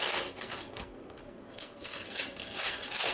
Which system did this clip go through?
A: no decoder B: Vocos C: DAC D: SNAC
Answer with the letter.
D